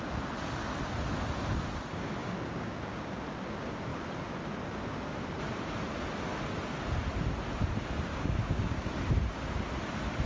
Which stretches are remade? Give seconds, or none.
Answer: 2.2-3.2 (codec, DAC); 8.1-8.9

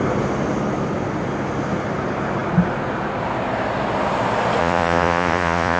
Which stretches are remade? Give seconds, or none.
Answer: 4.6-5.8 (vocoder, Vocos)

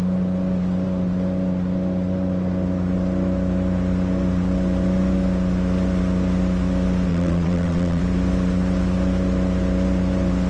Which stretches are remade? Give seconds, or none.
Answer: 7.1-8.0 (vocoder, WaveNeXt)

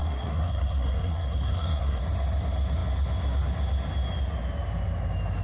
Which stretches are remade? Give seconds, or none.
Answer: 0.0-2.0 (codec, SNAC)